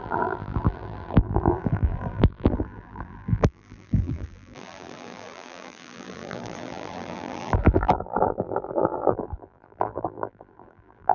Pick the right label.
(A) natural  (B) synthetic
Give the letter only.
B